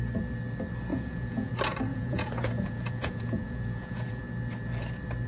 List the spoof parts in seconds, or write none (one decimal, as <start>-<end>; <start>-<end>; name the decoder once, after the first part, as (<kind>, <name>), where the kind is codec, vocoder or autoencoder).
0.9-1.5 (vocoder, Vocos); 1.9-4.2